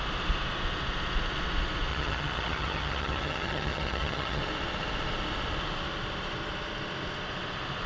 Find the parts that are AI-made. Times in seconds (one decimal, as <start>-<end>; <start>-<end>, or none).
1.9-4.4